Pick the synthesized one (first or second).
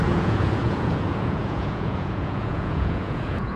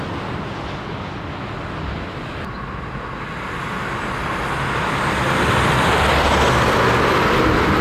first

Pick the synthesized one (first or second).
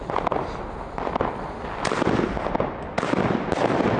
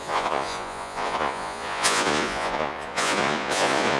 second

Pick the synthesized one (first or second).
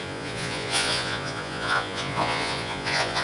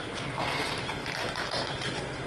first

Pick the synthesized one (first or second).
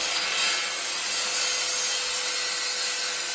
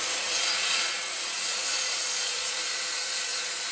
second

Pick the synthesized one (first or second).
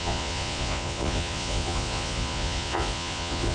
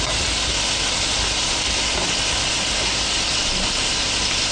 first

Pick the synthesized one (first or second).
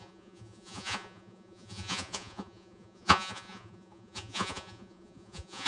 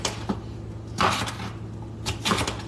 first